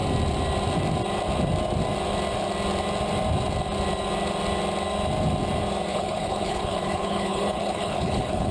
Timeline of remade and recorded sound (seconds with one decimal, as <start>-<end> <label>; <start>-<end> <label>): 0.0-5.9 recorded; 5.9-8.5 remade